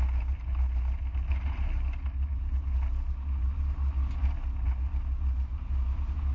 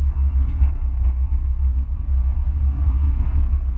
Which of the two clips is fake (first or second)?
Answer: second